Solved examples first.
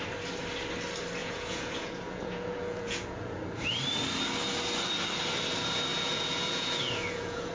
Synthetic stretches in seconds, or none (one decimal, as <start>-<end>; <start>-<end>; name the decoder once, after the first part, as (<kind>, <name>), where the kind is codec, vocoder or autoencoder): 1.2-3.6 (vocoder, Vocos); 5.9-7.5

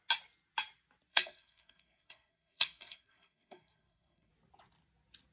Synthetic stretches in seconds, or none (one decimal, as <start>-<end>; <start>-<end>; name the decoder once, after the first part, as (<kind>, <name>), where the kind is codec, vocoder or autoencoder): 1.1-4.3 (codec, SNAC)

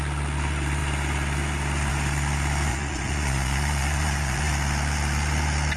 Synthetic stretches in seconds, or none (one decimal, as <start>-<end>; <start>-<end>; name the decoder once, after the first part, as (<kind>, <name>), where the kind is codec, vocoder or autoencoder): 2.7-4.5 (vocoder, Vocos)

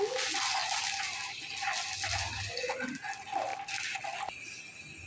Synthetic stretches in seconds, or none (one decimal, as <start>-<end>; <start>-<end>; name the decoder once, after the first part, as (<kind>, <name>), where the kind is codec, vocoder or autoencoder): none